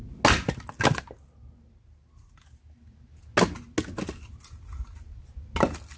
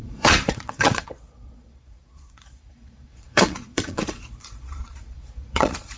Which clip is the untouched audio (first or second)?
first